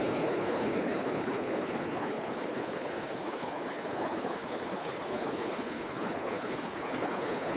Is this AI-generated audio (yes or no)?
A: yes